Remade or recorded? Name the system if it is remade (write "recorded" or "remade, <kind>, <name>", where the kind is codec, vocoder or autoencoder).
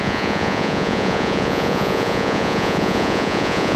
remade, vocoder, Vocos